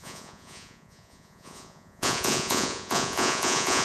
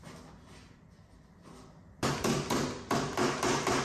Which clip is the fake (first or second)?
first